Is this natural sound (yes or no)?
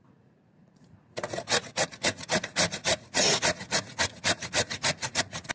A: no